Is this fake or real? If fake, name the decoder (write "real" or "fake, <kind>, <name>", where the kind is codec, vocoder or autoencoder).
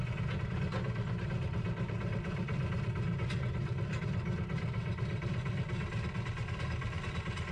real